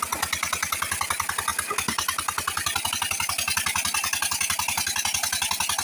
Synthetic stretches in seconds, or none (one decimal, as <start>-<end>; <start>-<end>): none